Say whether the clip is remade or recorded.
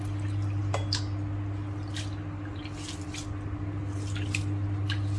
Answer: recorded